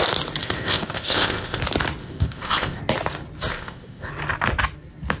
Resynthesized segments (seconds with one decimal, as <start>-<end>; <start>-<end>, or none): 0.4-1.6; 2.0-2.8; 3.5-4.1